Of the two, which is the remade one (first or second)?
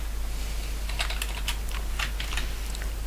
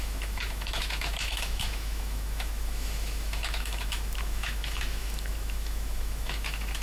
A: second